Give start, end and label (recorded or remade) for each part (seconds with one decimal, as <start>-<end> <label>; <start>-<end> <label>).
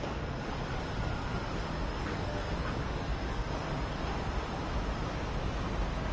0.0-1.2 recorded; 1.2-3.5 remade; 3.5-6.1 recorded